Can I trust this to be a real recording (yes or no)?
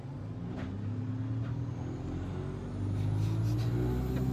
yes